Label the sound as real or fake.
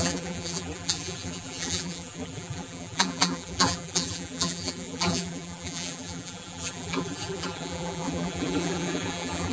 fake